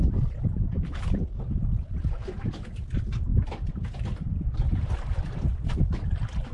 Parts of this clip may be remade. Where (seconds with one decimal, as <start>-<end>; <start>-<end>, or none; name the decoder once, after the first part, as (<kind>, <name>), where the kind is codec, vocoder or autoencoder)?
none